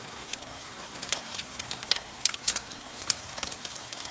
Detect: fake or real fake